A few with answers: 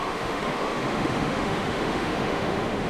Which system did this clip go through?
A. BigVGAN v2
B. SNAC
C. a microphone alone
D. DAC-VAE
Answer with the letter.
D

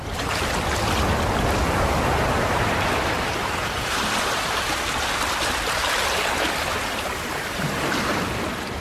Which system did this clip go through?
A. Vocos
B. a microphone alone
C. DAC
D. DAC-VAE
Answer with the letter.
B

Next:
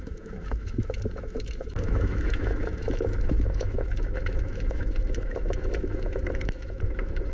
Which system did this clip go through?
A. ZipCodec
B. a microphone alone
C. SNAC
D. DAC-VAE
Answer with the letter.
D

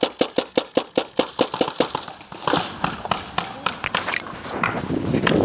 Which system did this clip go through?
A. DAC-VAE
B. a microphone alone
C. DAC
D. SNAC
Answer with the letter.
B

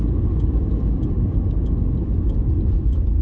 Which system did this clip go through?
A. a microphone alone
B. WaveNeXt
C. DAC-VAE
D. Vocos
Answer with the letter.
A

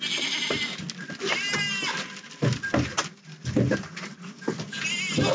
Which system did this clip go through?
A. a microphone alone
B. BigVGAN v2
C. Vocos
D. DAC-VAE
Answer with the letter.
A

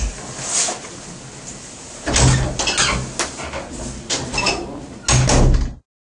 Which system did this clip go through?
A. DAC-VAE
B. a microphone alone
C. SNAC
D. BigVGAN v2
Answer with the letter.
B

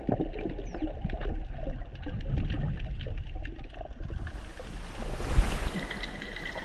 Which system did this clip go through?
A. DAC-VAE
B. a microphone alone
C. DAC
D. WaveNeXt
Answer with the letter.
B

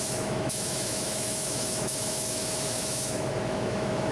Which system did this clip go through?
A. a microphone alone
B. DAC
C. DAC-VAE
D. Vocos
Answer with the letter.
C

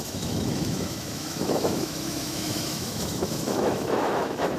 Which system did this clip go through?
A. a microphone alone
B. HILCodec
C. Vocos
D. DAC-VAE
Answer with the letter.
D